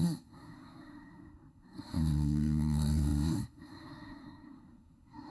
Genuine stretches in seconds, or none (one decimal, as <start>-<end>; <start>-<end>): none